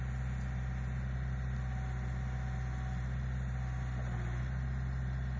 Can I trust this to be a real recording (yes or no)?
yes